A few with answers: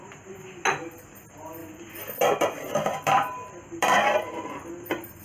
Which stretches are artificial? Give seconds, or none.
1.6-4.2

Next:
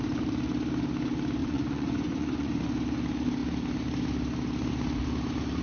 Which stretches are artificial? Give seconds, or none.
1.4-2.6

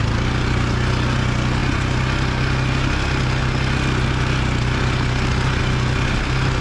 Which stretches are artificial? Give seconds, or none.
none